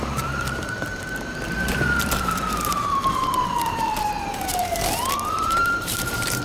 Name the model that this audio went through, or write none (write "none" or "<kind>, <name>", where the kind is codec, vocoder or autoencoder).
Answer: vocoder, BigVGAN v2